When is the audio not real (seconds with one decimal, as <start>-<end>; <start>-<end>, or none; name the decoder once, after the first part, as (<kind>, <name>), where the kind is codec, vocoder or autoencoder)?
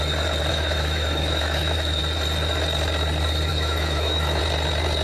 0.5-2.0 (autoencoder, DAC-VAE); 3.5-4.4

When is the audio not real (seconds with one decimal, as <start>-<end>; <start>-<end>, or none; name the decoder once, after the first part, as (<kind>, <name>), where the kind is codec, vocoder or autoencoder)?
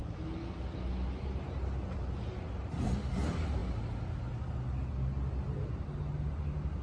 none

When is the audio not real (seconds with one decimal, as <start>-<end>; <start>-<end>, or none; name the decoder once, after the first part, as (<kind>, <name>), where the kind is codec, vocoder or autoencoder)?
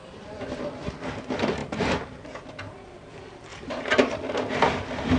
3.5-4.2 (vocoder, BigVGAN v2)